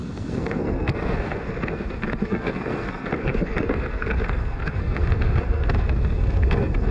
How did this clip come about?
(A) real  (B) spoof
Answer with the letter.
B